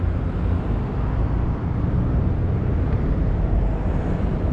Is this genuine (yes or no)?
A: yes